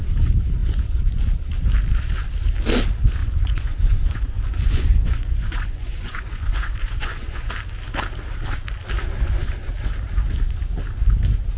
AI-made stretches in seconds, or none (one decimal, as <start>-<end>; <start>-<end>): 3.2-7.5